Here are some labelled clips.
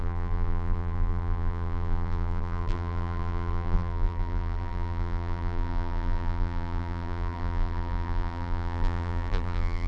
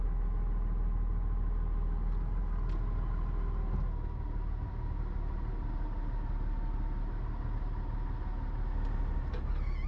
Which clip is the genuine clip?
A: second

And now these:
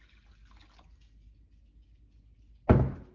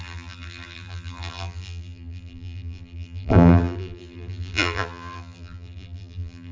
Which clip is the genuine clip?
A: first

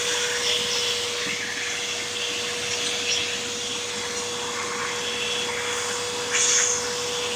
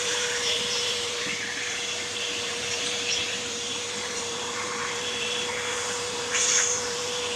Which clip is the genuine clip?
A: first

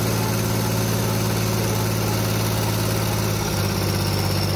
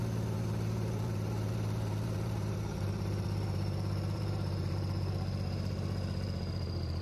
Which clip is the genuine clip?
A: first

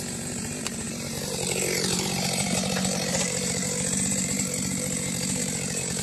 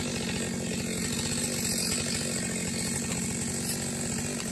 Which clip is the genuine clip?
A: second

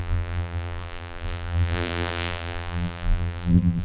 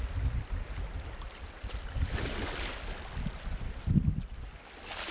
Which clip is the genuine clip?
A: second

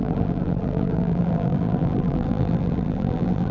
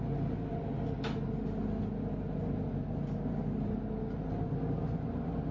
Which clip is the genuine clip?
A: second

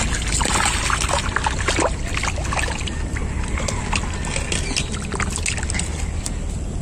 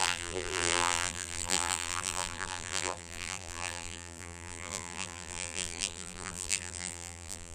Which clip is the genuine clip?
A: first